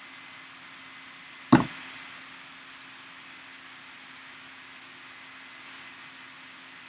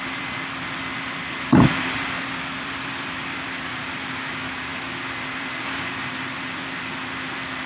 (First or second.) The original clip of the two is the first